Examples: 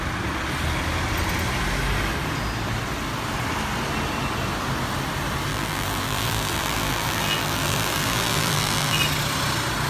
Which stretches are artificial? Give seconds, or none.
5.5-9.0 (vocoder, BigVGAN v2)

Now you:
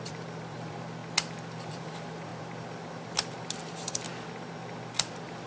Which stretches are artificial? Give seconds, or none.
0.0-1.0 (vocoder, BigVGAN v2); 1.7-4.1; 5.1-5.5

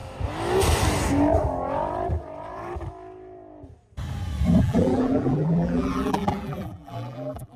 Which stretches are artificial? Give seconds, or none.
4.6-7.6 (vocoder, BigVGAN v2)

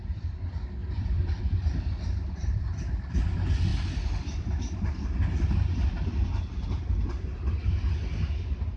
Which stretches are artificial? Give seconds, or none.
0.8-1.4 (vocoder, BigVGAN v2); 2.4-3.2

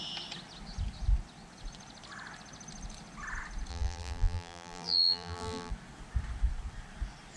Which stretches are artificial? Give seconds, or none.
3.7-5.7 (vocoder, BigVGAN v2)